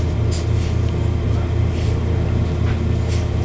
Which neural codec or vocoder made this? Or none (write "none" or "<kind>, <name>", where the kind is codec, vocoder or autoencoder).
none